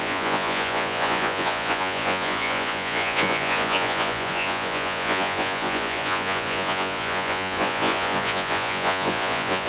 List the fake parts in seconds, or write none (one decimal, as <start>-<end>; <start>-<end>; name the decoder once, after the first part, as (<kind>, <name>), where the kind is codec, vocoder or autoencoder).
0.0-9.7 (vocoder, Vocos)